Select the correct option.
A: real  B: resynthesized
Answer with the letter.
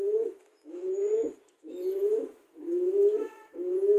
B